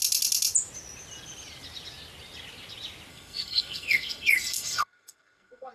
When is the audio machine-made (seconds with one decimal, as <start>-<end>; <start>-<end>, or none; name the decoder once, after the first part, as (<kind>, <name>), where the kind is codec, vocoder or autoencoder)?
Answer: 3.1-5.7 (codec, SNAC)